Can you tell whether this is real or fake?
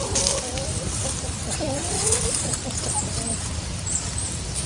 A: real